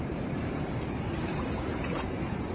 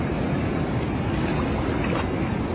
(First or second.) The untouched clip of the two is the second